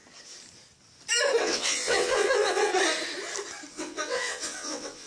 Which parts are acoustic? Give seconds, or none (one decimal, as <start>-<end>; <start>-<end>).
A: 0.0-1.4; 2.7-3.7